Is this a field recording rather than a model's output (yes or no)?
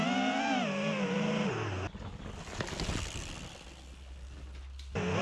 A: yes